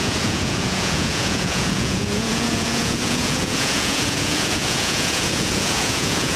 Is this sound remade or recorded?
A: remade